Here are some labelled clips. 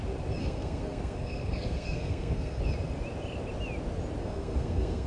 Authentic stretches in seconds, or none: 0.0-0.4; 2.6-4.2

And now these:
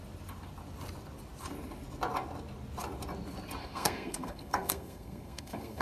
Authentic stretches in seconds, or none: 0.0-3.6

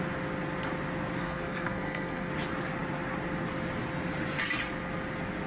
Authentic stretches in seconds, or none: 0.0-1.2; 2.3-5.5